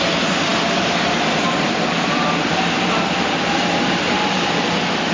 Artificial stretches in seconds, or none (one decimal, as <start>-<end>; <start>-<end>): none